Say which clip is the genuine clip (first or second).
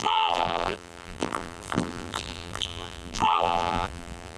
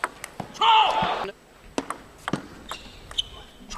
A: second